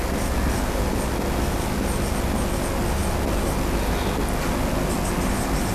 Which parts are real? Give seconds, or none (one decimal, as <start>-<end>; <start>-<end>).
0.0-5.7